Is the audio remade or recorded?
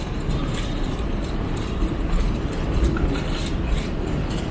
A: recorded